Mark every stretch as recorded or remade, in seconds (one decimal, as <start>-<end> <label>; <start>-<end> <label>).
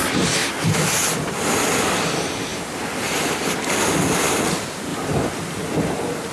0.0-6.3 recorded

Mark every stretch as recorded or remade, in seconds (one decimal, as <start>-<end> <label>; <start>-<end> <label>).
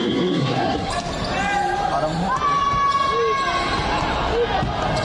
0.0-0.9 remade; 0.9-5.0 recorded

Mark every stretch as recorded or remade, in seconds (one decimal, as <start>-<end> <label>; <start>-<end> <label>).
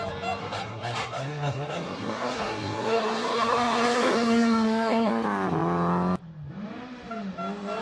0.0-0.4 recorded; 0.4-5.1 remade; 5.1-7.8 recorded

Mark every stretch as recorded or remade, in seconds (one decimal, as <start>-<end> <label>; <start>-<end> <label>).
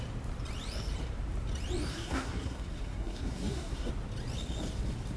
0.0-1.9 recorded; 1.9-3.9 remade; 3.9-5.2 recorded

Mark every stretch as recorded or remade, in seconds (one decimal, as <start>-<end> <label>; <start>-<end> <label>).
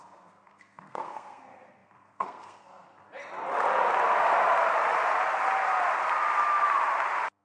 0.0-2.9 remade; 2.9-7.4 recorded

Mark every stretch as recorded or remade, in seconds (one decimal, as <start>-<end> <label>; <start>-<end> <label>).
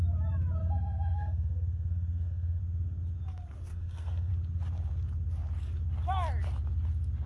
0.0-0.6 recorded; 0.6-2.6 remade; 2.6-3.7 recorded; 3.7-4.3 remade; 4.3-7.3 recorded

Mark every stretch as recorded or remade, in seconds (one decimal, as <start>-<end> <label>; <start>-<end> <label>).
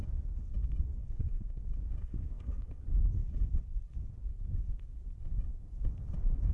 0.0-1.0 recorded; 1.0-1.6 remade; 1.6-2.0 recorded; 2.0-2.8 remade; 2.8-6.5 recorded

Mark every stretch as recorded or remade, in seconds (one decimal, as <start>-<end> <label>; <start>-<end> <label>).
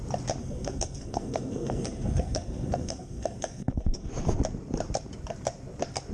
0.0-0.4 recorded; 0.4-4.1 remade; 4.1-6.1 recorded